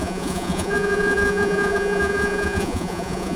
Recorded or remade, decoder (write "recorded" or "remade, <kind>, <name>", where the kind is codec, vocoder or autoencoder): remade, vocoder, Vocos